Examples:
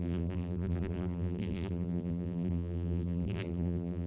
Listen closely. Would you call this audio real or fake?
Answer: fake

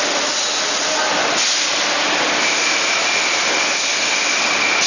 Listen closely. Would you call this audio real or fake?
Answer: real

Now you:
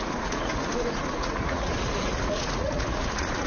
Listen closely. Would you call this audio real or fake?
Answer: fake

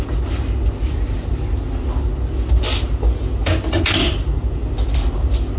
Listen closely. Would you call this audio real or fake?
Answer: real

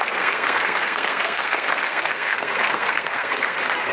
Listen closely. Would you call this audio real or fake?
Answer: fake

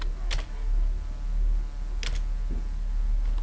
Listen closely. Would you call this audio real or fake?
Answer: real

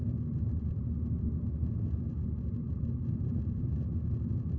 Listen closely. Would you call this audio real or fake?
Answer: real